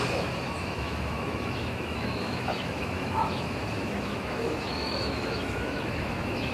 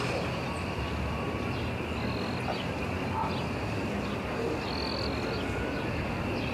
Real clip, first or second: second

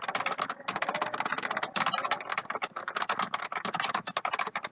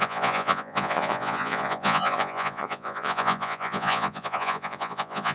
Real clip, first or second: first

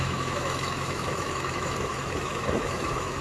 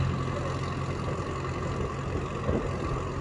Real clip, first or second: second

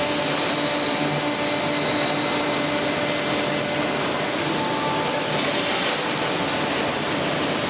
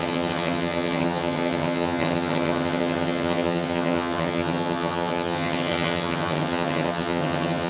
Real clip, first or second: first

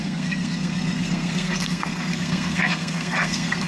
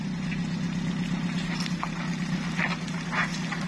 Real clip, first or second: second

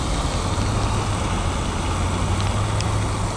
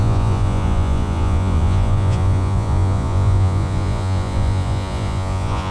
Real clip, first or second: first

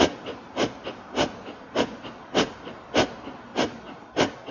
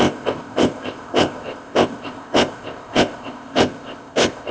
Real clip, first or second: first